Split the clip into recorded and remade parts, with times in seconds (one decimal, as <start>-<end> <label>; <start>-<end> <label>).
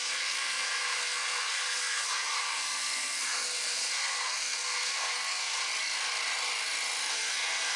0.0-5.7 remade; 5.7-7.1 recorded; 7.1-7.8 remade